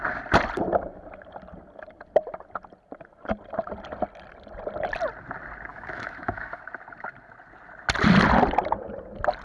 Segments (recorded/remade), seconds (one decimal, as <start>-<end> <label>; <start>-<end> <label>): 0.0-5.7 recorded; 5.7-6.6 remade; 6.6-9.4 recorded